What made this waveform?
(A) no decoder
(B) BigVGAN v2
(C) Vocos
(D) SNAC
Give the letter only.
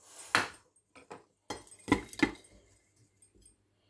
A